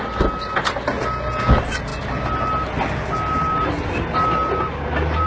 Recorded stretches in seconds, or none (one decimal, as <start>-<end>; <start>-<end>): 0.0-5.3